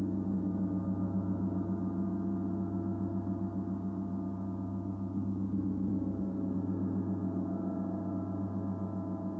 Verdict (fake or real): real